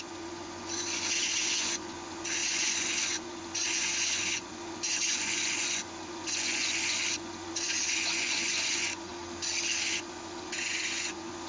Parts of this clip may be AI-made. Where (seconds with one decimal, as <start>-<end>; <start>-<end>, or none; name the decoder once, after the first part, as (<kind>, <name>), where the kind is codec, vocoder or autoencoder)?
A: 0.0-9.1 (vocoder, Vocos); 9.9-11.5